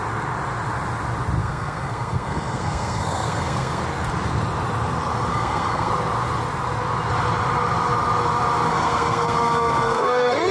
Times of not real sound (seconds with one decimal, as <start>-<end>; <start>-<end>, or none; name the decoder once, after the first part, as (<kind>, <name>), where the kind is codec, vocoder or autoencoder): 1.4-3.8 (codec, SNAC); 5.3-5.9; 8.7-10.5